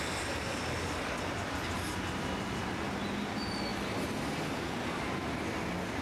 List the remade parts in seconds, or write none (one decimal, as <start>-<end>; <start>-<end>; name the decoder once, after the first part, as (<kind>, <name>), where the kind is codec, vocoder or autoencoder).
none